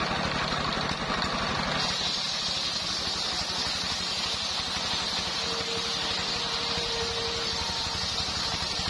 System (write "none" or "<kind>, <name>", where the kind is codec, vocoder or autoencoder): none